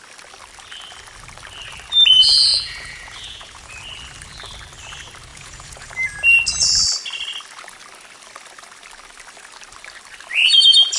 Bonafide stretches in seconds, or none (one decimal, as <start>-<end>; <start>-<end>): 0.0-2.5; 3.8-5.3; 5.9-11.0